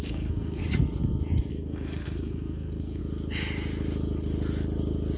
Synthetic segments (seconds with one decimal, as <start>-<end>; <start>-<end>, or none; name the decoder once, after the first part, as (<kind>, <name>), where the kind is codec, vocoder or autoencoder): 0.0-0.6 (codec, SNAC); 1.5-3.0